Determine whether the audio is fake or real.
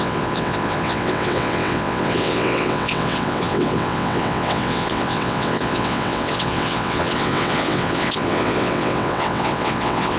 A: fake